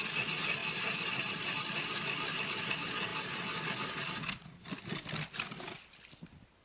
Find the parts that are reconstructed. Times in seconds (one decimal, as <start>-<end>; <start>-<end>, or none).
0.6-1.1